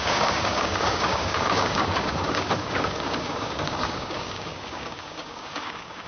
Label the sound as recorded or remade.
remade